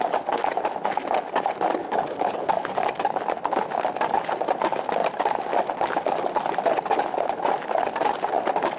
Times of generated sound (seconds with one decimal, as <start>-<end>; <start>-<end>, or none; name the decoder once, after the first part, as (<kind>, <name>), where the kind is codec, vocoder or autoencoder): 1.8-3.2 (codec, DAC)